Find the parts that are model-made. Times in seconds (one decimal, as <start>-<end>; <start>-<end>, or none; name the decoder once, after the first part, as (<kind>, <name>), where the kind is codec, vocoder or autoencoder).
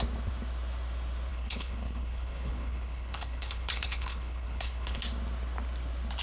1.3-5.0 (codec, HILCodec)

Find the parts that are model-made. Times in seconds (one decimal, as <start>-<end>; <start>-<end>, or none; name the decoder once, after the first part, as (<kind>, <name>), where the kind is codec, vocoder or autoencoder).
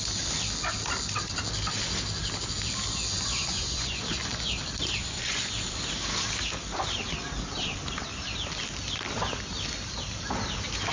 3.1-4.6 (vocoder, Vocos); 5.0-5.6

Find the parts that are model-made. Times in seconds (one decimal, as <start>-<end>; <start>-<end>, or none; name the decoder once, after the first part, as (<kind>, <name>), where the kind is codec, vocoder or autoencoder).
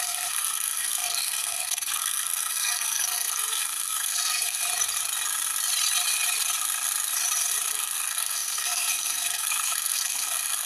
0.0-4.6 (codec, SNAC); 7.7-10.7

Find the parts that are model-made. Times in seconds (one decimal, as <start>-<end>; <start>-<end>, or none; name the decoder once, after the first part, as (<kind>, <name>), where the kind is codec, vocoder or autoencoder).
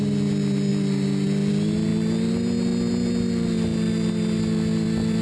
none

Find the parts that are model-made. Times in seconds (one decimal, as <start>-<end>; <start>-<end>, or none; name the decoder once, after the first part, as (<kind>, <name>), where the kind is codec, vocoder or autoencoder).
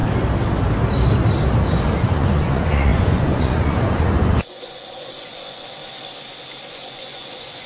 2.0-5.8 (vocoder, Vocos); 6.7-7.7